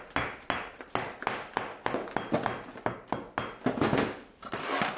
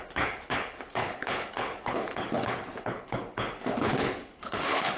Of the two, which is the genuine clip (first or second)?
first